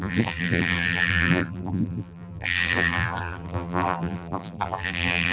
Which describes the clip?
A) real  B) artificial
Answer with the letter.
B